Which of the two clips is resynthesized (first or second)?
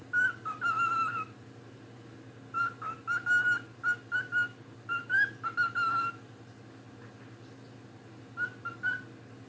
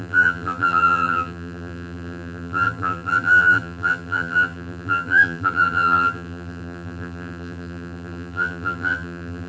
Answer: second